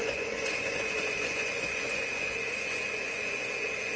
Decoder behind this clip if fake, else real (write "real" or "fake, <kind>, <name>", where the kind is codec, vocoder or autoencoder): fake, vocoder, Vocos